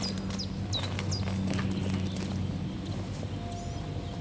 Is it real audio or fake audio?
real